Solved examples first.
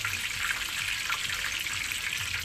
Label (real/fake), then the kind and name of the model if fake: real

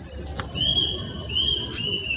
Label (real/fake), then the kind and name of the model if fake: real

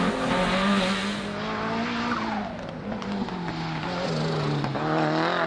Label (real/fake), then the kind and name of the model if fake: real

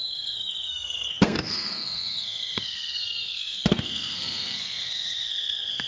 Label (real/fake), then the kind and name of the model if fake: fake, codec, SNAC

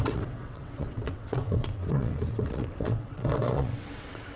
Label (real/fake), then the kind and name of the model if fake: fake, vocoder, WaveNeXt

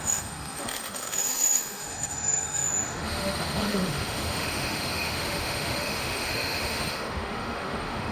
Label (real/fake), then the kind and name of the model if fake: fake, autoencoder, DAC-VAE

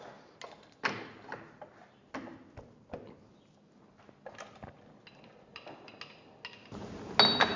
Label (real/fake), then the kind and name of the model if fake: real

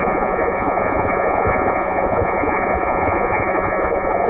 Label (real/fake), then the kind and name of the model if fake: fake, vocoder, Vocos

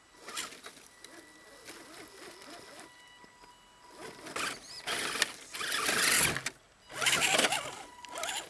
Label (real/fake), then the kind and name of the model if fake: real